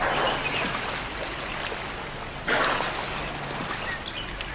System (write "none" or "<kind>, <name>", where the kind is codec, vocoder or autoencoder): none